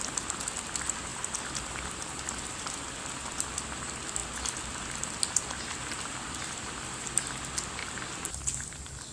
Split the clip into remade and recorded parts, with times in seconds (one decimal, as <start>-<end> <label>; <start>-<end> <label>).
0.0-9.1 recorded